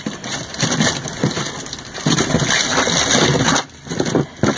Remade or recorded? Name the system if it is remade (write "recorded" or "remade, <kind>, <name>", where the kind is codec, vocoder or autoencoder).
recorded